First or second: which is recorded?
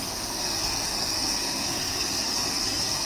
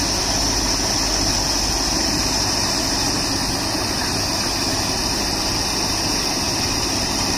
second